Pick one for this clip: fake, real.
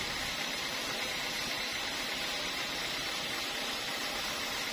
real